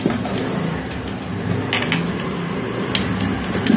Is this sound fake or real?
real